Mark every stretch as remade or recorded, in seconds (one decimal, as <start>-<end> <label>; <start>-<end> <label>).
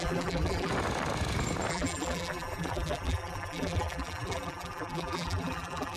0.0-0.7 remade; 0.7-1.7 recorded; 1.7-6.0 remade